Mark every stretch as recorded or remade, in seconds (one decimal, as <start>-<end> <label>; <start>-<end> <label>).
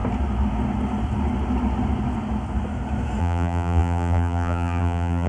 0.0-3.2 recorded; 3.2-5.3 remade